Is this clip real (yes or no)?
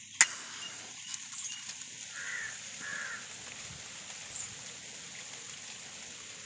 yes